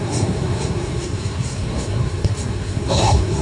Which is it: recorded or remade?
remade